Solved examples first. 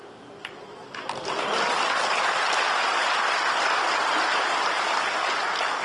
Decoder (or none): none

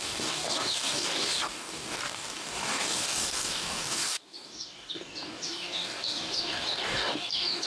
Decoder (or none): codec, DAC